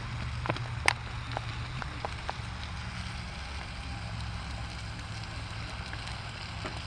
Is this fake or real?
real